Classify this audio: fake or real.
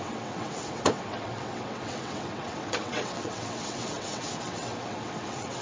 fake